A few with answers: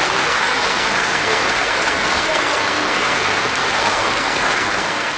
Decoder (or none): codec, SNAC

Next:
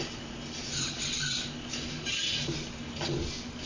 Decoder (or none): none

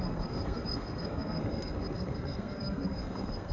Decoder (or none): codec, SNAC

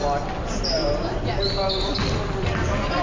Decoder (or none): none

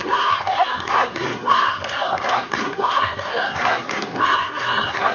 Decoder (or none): codec, SNAC